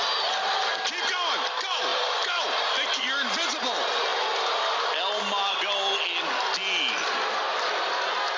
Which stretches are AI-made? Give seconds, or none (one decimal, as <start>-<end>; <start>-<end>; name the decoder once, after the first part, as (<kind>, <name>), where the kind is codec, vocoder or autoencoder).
4.1-5.0 (vocoder, BigVGAN v2)